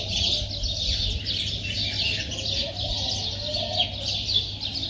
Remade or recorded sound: recorded